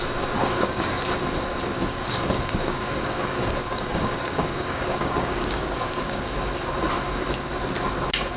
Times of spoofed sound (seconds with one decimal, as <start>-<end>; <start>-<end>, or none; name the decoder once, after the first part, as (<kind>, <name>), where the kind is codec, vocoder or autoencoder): 0.4-0.9 (codec, DAC); 1.9-6.4